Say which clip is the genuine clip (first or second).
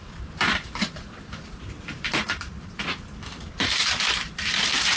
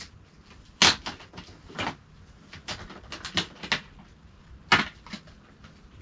second